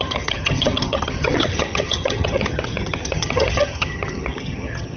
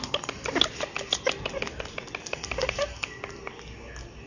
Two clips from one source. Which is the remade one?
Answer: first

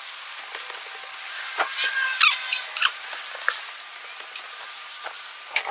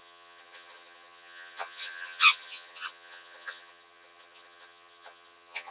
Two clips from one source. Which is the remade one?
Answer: second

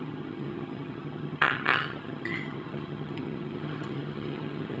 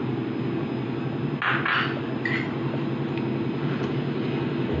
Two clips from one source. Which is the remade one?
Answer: first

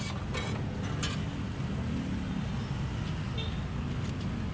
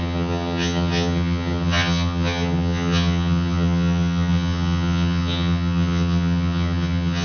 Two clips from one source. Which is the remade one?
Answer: second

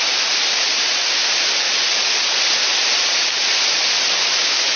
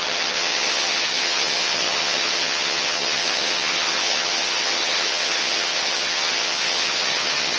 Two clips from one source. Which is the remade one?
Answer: second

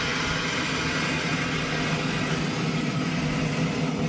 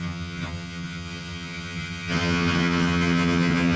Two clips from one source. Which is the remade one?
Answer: second